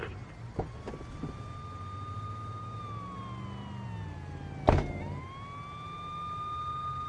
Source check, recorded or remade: recorded